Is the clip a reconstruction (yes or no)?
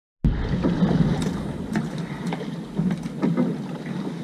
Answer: no